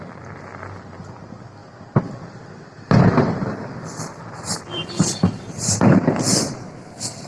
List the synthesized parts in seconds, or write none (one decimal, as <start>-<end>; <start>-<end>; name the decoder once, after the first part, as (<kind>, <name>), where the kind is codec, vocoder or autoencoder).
4.1-6.2 (vocoder, BigVGAN v2)